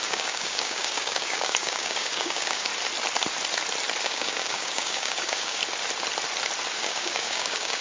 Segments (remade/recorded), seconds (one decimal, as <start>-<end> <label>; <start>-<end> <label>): 0.0-2.7 remade; 2.7-4.0 recorded; 4.0-5.6 remade; 5.6-6.8 recorded; 6.8-7.8 remade